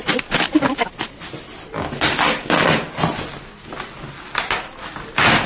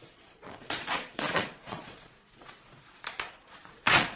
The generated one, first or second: second